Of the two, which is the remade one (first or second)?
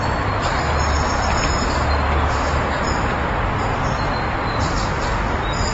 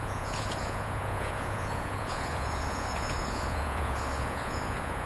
second